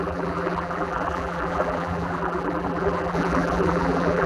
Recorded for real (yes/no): no